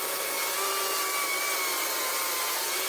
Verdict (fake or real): real